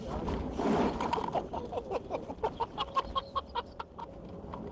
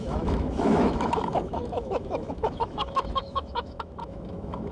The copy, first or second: second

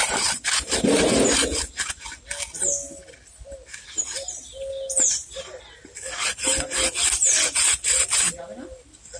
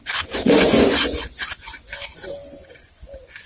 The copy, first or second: second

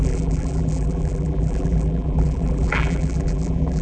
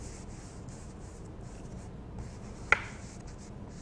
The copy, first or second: first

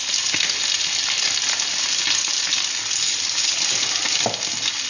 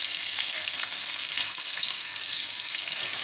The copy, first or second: second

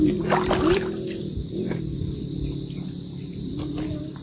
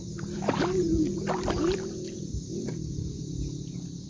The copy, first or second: second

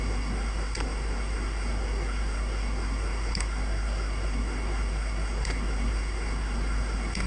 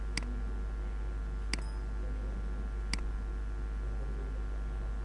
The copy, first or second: first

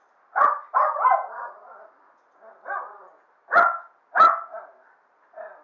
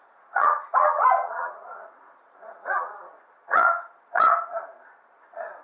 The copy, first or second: second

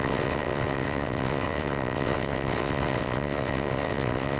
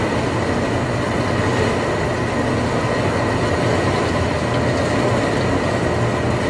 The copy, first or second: first